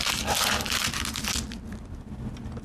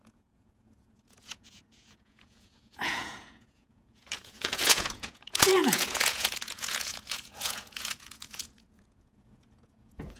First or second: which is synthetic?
second